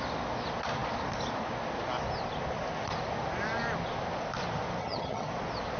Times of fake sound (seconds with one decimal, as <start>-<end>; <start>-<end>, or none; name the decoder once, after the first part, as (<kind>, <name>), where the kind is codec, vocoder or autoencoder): 4.8-5.3 (vocoder, HiFi-GAN)